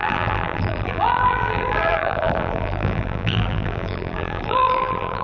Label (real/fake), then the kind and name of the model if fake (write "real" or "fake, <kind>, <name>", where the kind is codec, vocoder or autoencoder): fake, vocoder, BigVGAN v2